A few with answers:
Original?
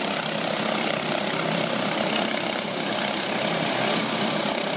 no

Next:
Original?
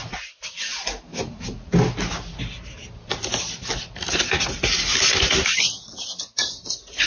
yes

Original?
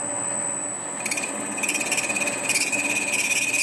yes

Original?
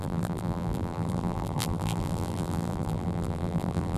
no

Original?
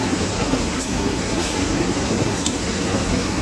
no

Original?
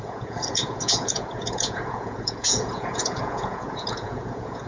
no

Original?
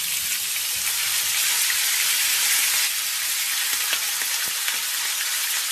yes